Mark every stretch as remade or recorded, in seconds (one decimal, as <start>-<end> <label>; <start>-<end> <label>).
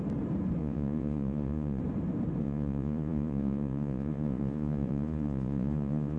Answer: 0.0-0.6 recorded; 0.6-1.8 remade; 1.8-2.4 recorded; 2.4-6.2 remade